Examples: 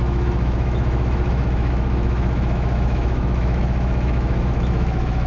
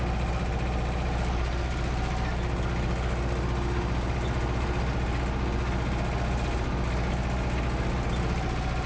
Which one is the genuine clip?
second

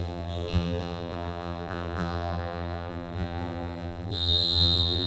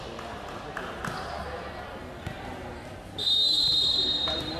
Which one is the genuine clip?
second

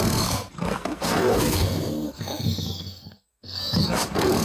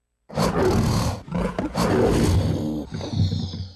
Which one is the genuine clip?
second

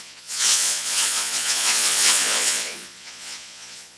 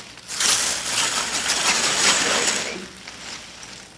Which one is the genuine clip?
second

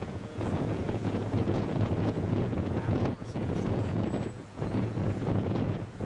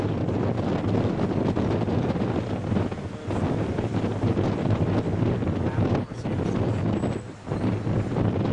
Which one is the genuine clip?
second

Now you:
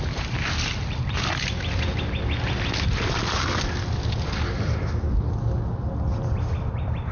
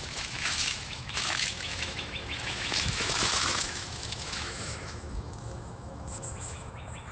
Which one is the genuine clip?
first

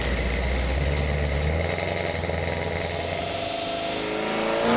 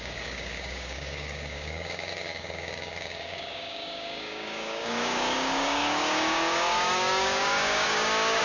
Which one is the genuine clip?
first